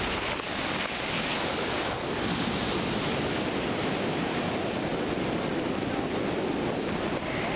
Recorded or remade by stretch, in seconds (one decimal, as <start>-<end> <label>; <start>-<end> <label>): 0.0-7.6 recorded